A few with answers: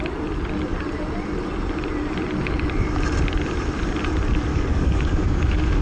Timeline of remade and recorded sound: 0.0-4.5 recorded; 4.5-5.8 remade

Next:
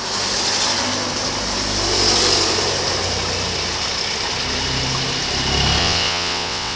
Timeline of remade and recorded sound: 0.0-5.8 recorded; 5.8-6.8 remade

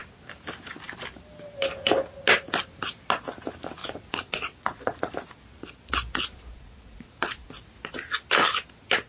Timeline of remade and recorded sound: 0.0-3.8 recorded; 3.8-5.1 remade; 5.1-6.3 recorded; 6.3-7.5 remade; 7.5-9.1 recorded

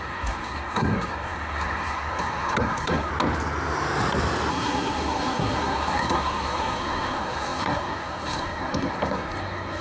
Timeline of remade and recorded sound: 0.0-3.1 remade; 3.1-4.5 recorded; 4.5-9.8 remade

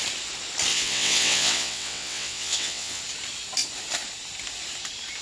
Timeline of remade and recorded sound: 0.0-0.7 recorded; 0.7-3.0 remade; 3.0-5.2 recorded